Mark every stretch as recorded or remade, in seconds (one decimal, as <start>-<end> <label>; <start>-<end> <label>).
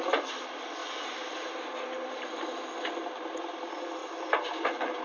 0.0-0.8 recorded; 0.8-2.6 remade; 2.6-4.0 recorded; 4.0-5.0 remade